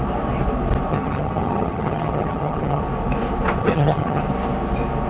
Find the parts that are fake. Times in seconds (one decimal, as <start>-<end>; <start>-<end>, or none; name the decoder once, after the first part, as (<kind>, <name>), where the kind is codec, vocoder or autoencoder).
0.9-2.8 (vocoder, HiFi-GAN); 3.6-4.2

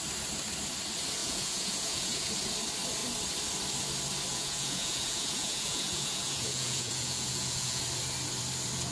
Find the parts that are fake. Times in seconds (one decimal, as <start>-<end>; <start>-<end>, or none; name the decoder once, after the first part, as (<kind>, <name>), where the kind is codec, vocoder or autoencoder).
1.2-2.3 (vocoder, Vocos); 4.3-7.8

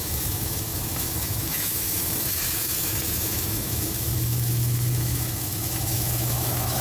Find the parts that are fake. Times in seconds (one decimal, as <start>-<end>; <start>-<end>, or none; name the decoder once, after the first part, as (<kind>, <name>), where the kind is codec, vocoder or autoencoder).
0.0-6.8 (autoencoder, DAC-VAE)

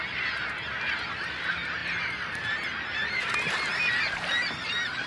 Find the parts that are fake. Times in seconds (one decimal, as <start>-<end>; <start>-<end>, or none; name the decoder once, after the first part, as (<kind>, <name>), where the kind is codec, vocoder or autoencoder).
none

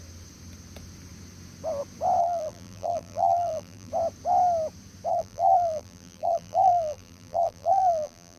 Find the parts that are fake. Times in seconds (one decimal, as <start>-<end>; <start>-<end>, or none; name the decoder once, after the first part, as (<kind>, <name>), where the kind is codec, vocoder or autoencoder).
2.2-3.9 (vocoder, BigVGAN v2); 5.1-8.4

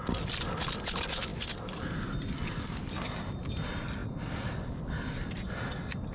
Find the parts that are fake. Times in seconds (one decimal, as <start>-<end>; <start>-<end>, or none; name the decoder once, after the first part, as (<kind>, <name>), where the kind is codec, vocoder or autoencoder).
none

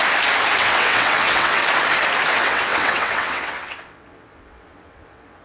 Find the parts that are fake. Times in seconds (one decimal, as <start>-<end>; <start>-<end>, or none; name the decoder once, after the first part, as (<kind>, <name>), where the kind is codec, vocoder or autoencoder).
0.6-1.6 (vocoder, WaveNeXt); 2.3-5.4